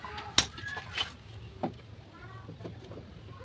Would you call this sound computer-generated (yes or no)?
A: no